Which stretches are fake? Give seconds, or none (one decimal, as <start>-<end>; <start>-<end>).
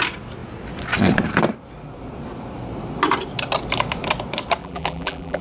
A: 4.6-5.4